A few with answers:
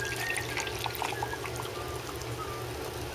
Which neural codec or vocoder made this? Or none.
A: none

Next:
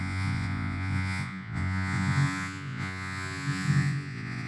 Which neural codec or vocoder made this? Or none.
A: vocoder, Vocos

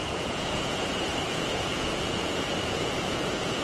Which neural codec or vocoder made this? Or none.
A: vocoder, Vocos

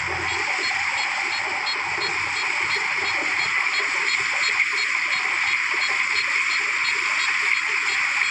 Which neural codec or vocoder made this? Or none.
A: none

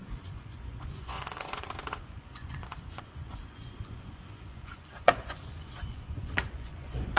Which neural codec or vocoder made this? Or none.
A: vocoder, Vocos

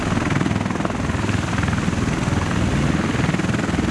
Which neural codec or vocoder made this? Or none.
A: none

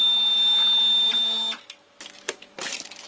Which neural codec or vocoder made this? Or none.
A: none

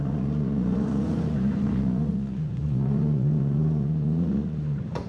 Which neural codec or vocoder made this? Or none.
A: vocoder, Vocos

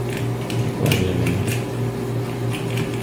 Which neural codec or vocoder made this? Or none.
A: none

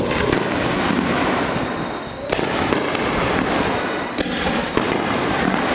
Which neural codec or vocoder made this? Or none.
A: none